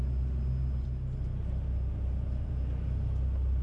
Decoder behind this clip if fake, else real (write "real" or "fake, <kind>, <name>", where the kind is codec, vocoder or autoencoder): real